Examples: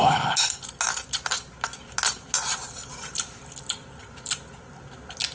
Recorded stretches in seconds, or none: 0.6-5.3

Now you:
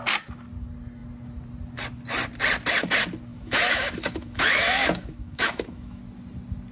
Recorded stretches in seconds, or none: 0.0-3.3; 6.0-6.7

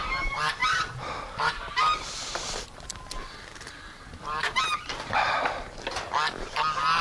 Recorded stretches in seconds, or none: 5.4-7.0

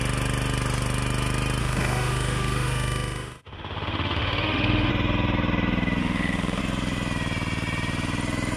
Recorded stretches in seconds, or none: 0.0-1.6; 4.9-6.0; 6.6-8.6

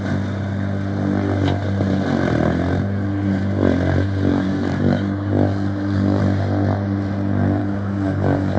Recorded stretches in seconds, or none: 0.0-4.3; 6.2-7.6

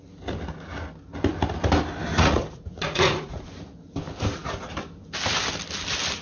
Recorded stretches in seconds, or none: 0.0-2.1; 3.4-6.2

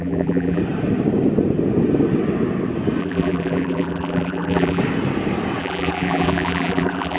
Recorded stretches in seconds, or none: 0.6-3.0; 4.8-5.6